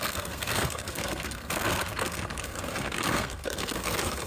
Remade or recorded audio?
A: remade